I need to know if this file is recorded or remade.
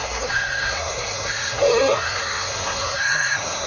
remade